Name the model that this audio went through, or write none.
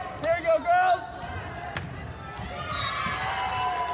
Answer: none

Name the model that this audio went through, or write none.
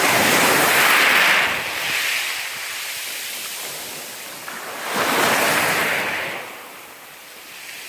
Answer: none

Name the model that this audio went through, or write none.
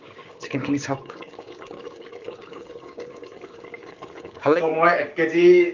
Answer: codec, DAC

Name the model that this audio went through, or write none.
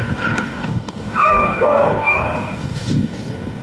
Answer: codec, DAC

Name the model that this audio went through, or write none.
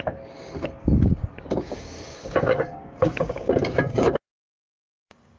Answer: codec, DAC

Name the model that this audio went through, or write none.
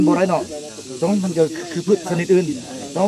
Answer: codec, DAC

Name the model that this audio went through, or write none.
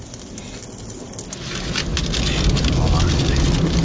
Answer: none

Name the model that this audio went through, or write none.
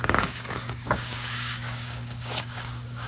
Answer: codec, DAC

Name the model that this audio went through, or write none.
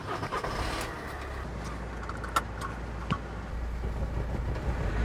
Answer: none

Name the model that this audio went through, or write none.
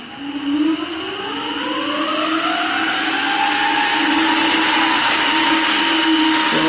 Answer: none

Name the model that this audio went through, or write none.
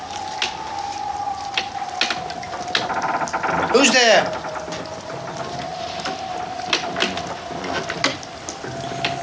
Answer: none